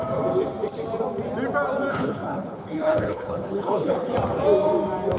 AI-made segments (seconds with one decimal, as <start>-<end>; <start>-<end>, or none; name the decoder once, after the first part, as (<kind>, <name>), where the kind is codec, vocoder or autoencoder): 1.9-4.1 (codec, HILCodec)